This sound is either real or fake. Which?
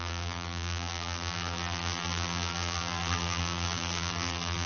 fake